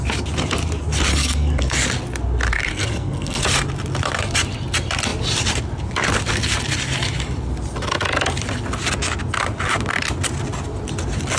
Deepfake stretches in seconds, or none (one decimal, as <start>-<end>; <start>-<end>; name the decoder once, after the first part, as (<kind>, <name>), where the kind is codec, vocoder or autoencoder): 1.1-1.8 (codec, SNAC); 2.7-3.4